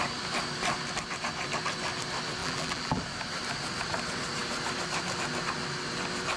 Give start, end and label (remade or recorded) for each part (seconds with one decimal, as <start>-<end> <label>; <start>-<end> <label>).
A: 0.0-2.4 recorded; 2.4-3.0 remade; 3.0-6.4 recorded